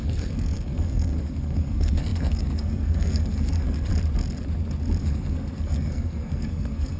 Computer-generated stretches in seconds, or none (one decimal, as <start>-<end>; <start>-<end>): 0.0-3.9; 5.0-7.0